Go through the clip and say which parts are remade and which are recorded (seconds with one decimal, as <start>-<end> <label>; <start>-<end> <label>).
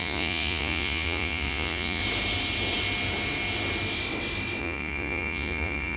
0.0-2.0 remade; 2.0-4.6 recorded; 4.6-6.0 remade